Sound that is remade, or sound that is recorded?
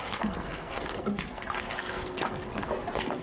remade